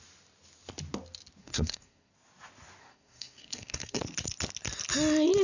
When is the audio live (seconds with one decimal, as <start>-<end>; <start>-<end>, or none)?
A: 0.0-1.4; 2.1-2.8; 4.0-5.4